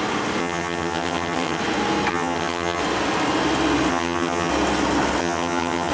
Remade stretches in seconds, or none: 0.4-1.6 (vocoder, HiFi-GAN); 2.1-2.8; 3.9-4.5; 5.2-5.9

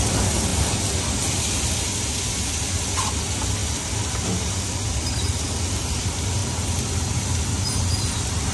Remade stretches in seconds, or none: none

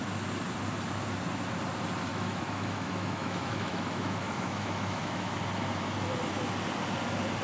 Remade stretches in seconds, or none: 2.1-5.4 (autoencoder, DAC-VAE)

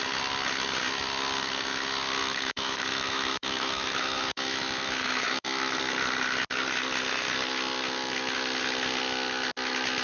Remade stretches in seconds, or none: 2.2-5.8 (autoencoder, DAC-VAE)

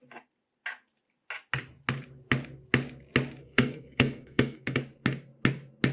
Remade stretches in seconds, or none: 3.4-4.8 (codec, SNAC)

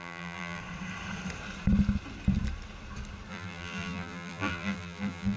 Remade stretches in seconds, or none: 0.0-0.6 (vocoder, BigVGAN v2); 3.3-5.4